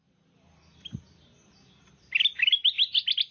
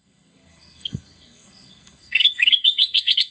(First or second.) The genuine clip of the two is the first